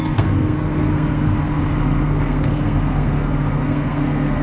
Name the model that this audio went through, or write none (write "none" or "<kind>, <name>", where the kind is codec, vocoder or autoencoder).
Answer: codec, SNAC